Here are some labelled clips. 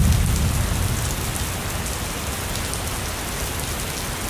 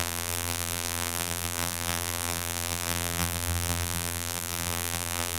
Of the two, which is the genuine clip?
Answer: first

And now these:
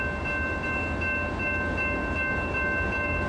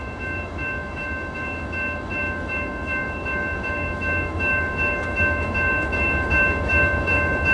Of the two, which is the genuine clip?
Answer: first